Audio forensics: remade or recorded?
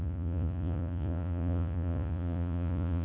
remade